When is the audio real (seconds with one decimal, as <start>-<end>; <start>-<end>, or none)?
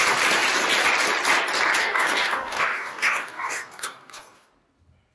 0.0-1.8; 4.5-5.1